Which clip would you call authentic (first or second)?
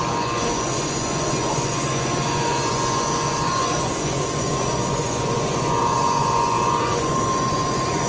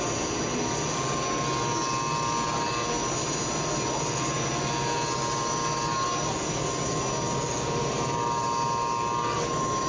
second